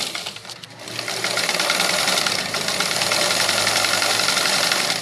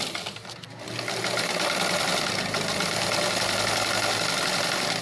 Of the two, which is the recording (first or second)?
second